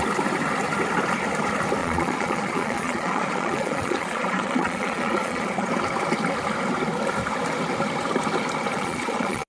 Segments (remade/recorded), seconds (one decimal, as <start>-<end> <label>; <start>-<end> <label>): 0.0-1.8 recorded; 1.8-5.7 remade; 5.7-8.7 recorded; 8.7-9.5 remade